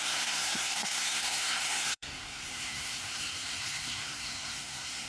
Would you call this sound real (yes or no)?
no